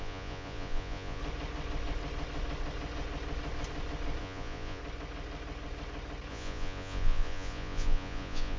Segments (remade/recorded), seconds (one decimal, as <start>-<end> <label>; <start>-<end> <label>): 0.0-1.2 remade; 1.2-4.2 recorded; 4.2-4.8 remade; 4.8-6.3 recorded; 6.3-8.6 remade